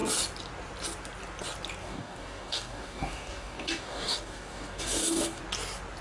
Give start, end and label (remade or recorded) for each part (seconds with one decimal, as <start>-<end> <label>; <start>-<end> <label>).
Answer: 0.0-1.8 recorded; 1.8-5.4 remade; 5.4-6.0 recorded